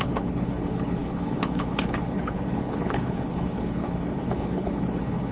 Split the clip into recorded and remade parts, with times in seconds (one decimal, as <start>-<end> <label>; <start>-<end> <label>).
0.0-5.3 remade